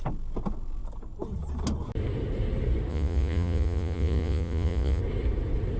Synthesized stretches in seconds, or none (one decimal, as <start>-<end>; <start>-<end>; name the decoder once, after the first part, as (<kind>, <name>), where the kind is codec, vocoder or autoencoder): 2.9-5.0 (vocoder, Vocos)